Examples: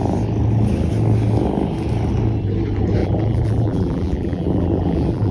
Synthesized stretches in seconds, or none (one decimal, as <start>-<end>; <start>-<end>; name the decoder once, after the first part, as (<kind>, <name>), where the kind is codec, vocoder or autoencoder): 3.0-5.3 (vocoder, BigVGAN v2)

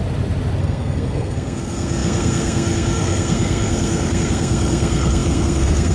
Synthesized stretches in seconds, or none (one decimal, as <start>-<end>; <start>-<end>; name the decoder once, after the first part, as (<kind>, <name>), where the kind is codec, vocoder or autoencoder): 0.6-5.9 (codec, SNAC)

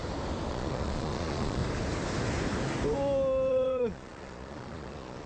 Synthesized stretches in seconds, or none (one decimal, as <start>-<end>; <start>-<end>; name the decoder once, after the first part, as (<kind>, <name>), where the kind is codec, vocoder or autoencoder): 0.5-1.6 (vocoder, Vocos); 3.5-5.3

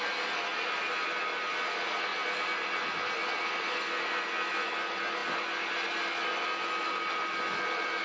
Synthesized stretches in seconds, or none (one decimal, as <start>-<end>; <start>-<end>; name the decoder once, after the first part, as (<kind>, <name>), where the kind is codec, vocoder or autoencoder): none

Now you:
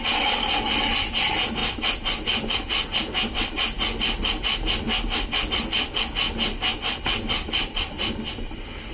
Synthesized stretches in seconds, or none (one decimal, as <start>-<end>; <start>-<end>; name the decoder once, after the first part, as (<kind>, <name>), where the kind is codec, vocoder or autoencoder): none